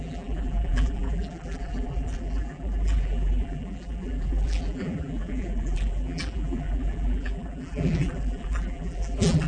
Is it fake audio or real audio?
fake